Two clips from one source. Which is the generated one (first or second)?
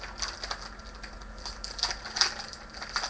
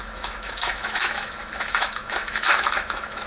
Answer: second